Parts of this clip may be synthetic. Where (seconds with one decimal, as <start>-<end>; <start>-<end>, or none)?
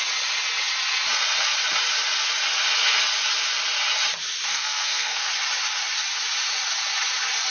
4.5-5.3